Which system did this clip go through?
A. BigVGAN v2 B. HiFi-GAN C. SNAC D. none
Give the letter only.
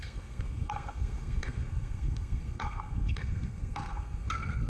C